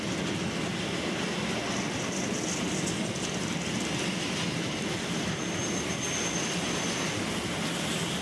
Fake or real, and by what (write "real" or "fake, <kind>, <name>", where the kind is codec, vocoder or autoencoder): real